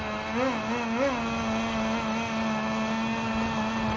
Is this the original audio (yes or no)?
yes